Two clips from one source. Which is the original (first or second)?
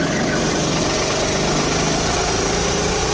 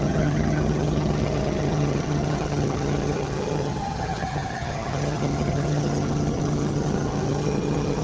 first